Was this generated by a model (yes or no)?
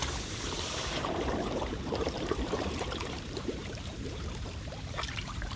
yes